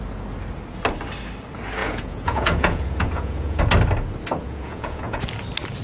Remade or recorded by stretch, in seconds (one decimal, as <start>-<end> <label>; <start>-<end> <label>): 0.0-1.8 recorded; 1.8-3.6 remade; 3.6-4.4 recorded; 4.4-5.2 remade; 5.2-5.8 recorded